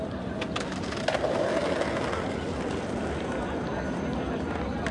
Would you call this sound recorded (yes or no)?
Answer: yes